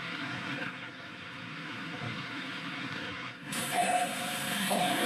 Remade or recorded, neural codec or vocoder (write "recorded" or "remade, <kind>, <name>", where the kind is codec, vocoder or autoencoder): remade, codec, SNAC